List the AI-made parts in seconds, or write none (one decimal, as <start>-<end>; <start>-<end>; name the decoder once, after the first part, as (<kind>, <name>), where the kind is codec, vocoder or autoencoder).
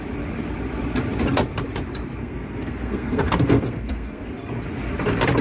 2.2-4.3 (codec, SNAC)